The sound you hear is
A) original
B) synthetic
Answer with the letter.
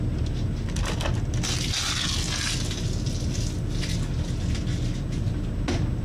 A